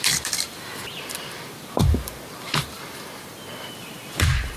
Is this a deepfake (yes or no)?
yes